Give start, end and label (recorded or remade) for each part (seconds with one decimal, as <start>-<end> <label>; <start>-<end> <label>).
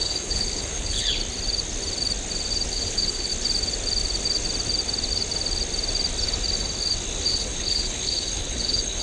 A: 0.0-1.2 remade; 1.2-2.7 recorded; 2.7-3.3 remade; 3.3-7.3 recorded; 7.3-9.0 remade